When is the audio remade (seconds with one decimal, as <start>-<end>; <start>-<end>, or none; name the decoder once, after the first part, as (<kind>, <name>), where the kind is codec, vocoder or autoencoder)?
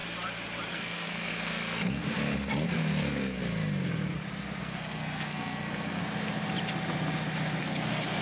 0.7-2.0 (codec, SNAC); 2.7-3.4; 4.6-6.0; 7.6-8.2